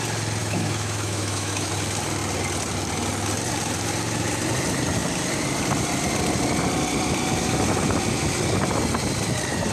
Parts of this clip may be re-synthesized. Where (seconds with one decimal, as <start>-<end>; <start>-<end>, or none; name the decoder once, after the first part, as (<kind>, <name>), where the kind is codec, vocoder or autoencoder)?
0.4-1.7 (autoencoder, DAC-VAE)